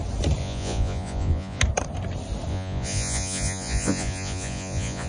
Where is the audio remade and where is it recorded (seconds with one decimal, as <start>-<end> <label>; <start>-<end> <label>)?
0.0-0.4 recorded; 0.4-1.6 remade; 1.6-2.5 recorded; 2.5-5.1 remade